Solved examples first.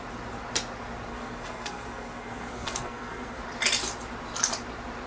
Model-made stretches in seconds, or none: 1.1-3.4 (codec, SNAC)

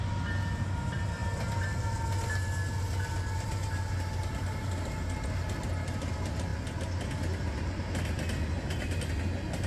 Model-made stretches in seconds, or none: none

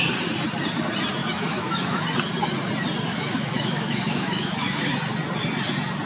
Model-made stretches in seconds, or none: 1.2-2.0 (autoencoder, DAC-VAE); 3.1-4.9

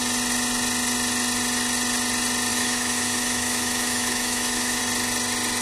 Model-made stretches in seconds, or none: 2.5-4.8 (autoencoder, DAC-VAE)

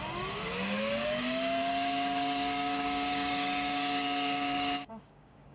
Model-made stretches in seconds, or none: 0.0-5.5 (codec, DAC)

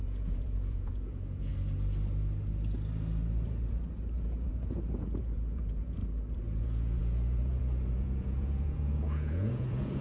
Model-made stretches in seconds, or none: 0.0-1.5 (vocoder, Vocos); 4.2-6.0; 6.6-10.0

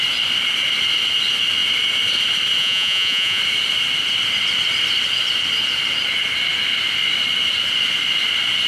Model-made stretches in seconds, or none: 2.6-3.4 (vocoder, Vocos)